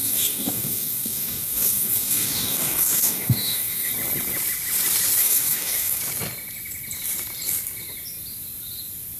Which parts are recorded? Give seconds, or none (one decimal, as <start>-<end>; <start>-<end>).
3.9-5.2; 6.0-9.2

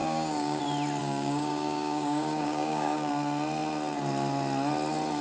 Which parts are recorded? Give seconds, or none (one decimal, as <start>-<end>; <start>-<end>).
0.6-1.0; 3.1-5.2

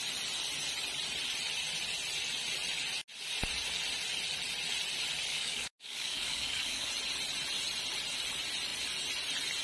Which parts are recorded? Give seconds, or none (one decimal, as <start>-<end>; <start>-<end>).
0.0-5.3; 6.9-9.6

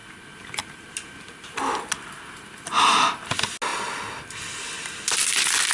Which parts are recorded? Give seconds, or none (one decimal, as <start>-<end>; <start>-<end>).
0.0-5.7

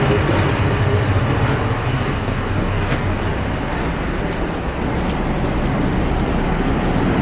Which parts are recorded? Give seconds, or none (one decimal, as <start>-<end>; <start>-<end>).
0.0-1.9; 3.2-7.2